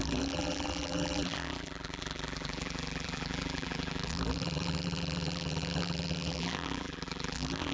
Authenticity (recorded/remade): remade